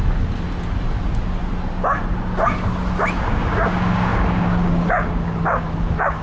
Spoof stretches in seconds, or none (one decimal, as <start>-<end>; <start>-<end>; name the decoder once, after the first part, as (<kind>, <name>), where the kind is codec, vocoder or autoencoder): 3.1-6.2 (codec, DAC)